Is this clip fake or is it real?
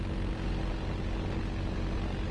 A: real